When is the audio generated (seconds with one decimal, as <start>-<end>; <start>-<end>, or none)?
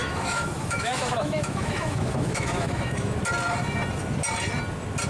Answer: 0.0-3.1